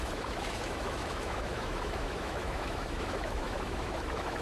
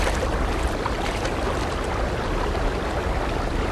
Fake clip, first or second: first